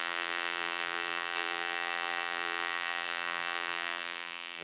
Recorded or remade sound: remade